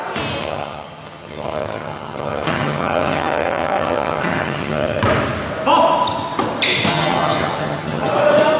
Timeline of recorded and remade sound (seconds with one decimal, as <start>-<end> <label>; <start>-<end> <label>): 0.0-0.4 recorded; 0.4-5.0 remade; 5.0-6.9 recorded; 6.9-8.1 remade; 8.1-8.6 recorded

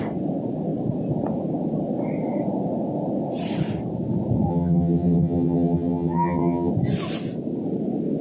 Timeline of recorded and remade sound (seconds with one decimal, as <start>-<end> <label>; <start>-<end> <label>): 0.0-4.5 recorded; 4.5-6.7 remade; 6.7-8.2 recorded

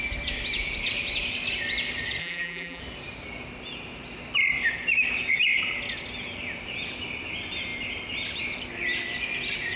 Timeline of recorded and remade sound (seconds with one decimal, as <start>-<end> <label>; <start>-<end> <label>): 0.0-2.2 recorded; 2.2-2.8 remade; 2.8-9.8 recorded

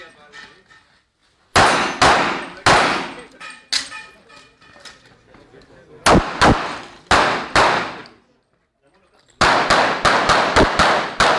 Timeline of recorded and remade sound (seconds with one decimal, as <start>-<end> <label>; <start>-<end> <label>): 0.0-11.4 recorded

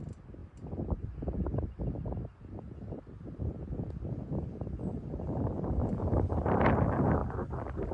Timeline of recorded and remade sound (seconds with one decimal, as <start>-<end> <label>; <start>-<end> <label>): 0.0-5.8 recorded; 5.8-6.7 remade; 6.7-7.9 recorded

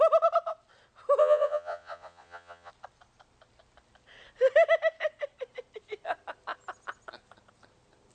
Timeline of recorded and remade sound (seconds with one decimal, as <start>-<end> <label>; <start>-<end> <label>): 0.0-1.2 recorded; 1.2-2.7 remade; 2.7-8.1 recorded